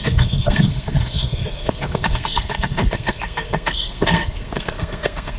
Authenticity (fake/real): fake